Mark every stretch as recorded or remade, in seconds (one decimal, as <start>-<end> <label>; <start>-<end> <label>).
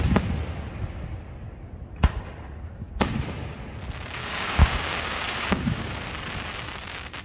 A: 0.0-4.2 recorded; 4.2-5.9 remade; 5.9-7.2 recorded